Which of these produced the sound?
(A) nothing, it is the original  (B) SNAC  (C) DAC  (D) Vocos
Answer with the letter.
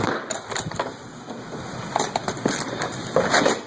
A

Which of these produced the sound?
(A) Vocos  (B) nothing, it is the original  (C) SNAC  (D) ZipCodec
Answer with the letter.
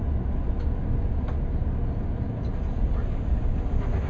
B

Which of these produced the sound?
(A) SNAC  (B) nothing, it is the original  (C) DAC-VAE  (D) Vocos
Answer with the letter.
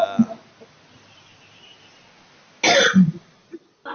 B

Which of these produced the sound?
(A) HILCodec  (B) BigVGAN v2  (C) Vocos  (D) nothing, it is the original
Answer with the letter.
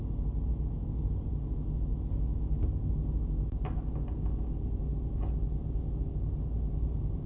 D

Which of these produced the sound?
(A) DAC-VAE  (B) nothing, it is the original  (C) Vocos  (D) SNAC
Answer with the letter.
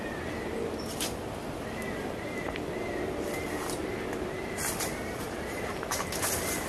B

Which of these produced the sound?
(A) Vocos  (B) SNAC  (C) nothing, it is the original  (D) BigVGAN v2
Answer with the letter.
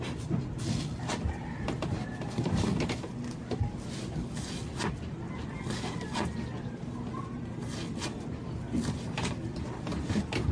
C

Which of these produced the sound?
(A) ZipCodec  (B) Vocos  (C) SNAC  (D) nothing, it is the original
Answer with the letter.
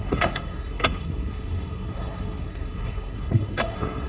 C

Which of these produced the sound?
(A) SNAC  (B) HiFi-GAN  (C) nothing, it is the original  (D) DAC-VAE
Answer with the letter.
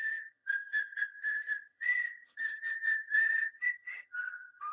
B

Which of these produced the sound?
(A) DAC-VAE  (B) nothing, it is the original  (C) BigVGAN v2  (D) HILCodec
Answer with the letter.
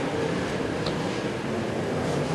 B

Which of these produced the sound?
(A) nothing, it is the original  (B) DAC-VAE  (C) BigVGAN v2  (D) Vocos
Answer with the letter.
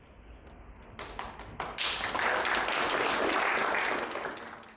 A